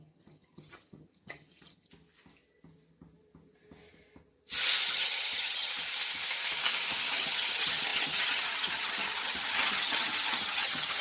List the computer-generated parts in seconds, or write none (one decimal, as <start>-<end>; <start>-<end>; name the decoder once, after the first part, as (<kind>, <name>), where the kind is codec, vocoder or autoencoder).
0.0-1.9 (vocoder, HiFi-GAN); 4.9-5.7; 7.1-11.0